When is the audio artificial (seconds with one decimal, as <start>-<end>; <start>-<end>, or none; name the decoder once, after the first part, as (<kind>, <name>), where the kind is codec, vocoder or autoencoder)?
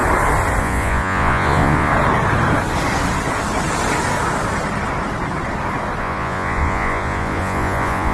0.6-1.9 (vocoder, Vocos); 6.0-8.1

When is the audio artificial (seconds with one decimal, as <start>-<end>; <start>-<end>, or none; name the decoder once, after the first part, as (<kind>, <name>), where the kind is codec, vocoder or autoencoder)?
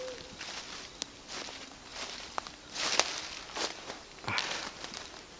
none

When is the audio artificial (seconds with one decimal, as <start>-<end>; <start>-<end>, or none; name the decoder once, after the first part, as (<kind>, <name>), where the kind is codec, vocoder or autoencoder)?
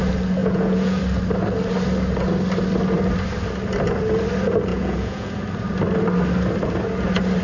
0.4-1.0 (vocoder, Vocos); 4.7-5.4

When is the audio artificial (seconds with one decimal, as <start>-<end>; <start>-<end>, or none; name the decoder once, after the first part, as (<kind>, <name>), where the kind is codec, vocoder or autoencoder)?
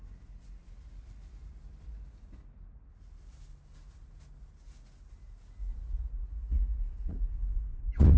5.6-8.2 (vocoder, Vocos)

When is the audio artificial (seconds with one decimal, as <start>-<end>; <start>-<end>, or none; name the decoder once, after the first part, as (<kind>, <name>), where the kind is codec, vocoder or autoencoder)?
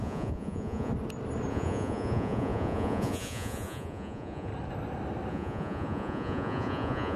0.0-0.9 (vocoder, Vocos); 1.5-4.5; 5.3-7.2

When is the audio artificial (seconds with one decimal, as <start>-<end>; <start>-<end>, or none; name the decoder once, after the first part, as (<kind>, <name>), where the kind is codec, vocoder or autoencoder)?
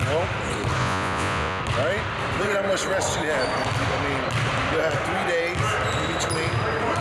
0.8-1.6 (vocoder, Vocos)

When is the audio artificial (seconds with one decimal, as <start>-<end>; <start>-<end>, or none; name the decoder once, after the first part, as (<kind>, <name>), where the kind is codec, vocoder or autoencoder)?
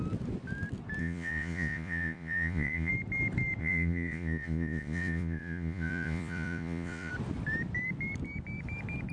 1.0-2.9 (vocoder, Vocos); 3.6-7.1